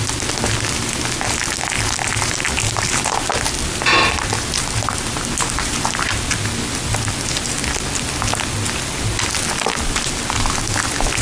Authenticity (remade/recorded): recorded